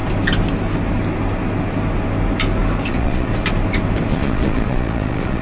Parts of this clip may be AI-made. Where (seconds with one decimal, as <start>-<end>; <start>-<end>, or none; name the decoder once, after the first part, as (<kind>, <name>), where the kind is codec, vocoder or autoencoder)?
2.9-3.3 (vocoder, Vocos); 4.1-5.4